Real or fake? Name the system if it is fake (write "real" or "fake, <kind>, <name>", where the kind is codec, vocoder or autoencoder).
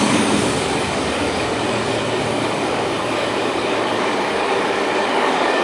fake, codec, DAC